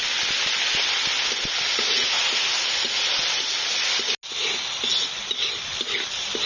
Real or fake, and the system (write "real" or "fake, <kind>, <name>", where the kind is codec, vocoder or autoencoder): real